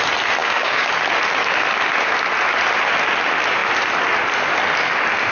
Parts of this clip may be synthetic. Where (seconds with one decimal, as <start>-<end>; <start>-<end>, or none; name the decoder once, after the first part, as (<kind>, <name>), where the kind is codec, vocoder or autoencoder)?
0.4-0.9 (codec, DAC)